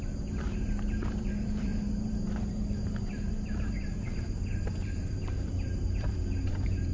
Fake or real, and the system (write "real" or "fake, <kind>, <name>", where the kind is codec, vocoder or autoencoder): fake, vocoder, BigVGAN v2